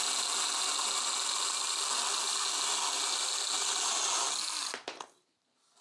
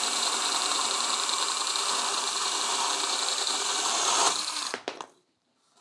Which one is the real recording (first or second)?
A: first